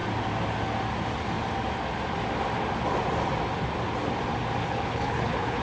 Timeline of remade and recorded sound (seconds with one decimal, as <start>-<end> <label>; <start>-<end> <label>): 0.0-4.6 recorded; 4.6-5.6 remade